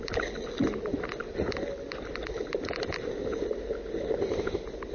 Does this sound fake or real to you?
real